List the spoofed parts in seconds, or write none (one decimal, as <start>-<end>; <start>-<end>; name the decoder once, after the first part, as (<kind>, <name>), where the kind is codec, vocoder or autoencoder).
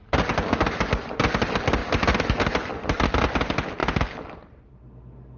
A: none